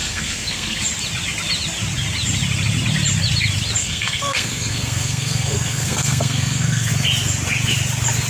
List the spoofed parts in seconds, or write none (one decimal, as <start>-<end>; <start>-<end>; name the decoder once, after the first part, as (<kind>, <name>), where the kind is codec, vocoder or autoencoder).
0.0-0.8 (codec, SNAC); 3.8-6.9